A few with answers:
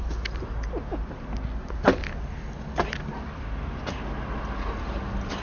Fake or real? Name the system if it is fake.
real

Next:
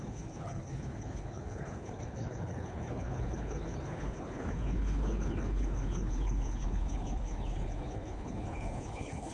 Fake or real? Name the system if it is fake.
fake, codec, HILCodec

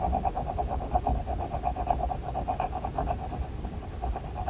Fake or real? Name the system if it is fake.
real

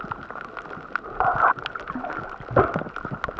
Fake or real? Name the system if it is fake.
real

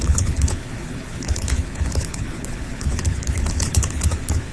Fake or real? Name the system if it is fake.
fake, codec, HILCodec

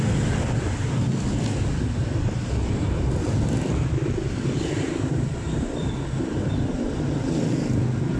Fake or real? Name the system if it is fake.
real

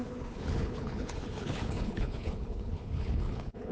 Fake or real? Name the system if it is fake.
fake, codec, HILCodec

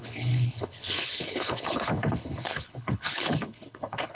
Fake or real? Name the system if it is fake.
fake, codec, HILCodec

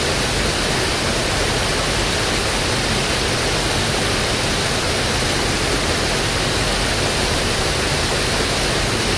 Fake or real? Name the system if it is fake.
real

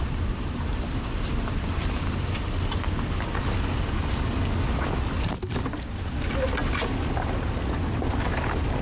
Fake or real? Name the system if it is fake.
real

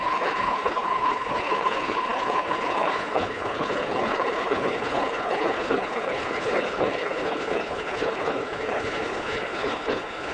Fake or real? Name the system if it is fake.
fake, codec, HILCodec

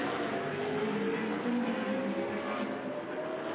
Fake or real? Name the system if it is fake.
real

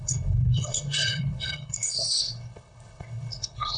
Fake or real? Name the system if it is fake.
fake, codec, HILCodec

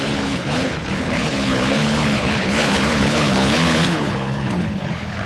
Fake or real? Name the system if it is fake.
fake, codec, HILCodec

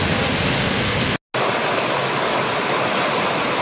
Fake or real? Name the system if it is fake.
real